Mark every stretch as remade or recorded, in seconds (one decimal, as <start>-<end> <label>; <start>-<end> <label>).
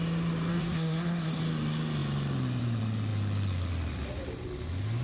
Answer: 0.0-0.5 recorded; 0.5-1.4 remade; 1.4-5.0 recorded